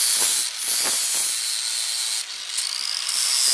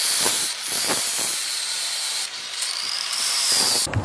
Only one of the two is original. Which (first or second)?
first